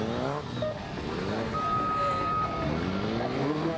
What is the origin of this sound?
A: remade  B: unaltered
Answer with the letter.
B